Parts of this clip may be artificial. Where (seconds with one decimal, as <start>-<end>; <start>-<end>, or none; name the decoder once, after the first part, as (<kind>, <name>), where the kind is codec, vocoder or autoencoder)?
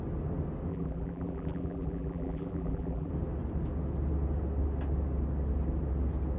0.7-3.1 (vocoder, BigVGAN v2)